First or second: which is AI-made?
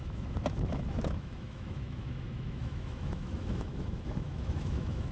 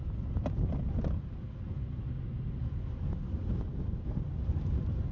first